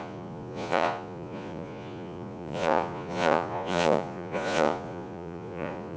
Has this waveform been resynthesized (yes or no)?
yes